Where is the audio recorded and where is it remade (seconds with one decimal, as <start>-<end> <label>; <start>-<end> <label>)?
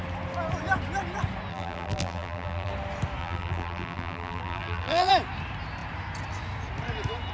0.0-1.5 recorded; 1.5-2.7 remade; 2.7-3.2 recorded; 3.2-5.1 remade; 5.1-7.3 recorded